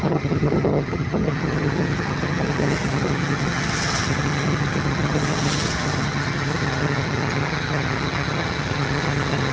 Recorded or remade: remade